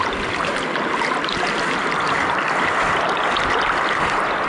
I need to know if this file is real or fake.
real